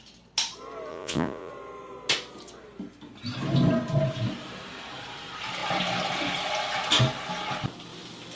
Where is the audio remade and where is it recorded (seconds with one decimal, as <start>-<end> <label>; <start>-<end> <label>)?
0.0-0.9 recorded; 0.9-1.5 remade; 1.5-8.4 recorded